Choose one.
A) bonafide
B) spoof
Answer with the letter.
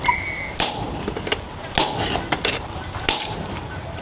A